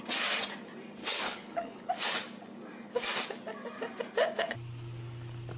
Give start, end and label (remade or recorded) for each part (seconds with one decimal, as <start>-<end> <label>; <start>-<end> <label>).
0.0-1.0 recorded; 1.0-1.9 remade; 1.9-5.6 recorded